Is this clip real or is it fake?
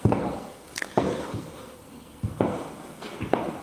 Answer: fake